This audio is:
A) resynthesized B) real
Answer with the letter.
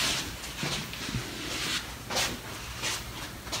B